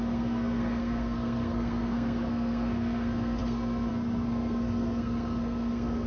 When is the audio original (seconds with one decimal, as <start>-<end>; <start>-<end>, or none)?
none